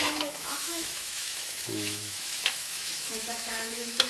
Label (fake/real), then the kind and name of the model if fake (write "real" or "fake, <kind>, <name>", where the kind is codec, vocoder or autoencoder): fake, autoencoder, DAC-VAE